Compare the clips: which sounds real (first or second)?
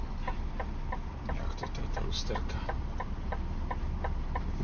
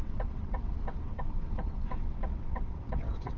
first